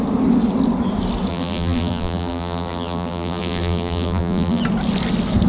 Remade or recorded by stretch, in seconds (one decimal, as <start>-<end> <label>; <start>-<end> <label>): 0.0-1.3 recorded; 1.3-4.6 remade; 4.6-5.5 recorded